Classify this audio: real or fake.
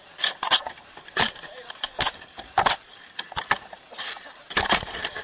real